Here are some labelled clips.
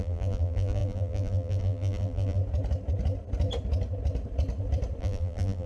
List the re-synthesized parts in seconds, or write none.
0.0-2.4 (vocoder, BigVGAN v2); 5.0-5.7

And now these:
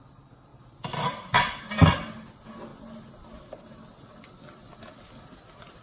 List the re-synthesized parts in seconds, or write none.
none